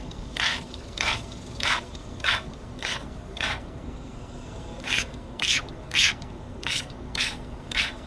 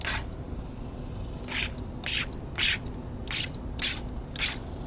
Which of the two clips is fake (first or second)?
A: first